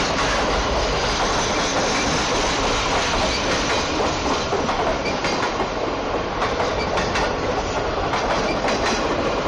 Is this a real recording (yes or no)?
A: yes